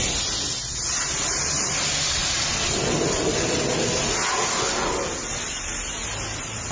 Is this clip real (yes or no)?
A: yes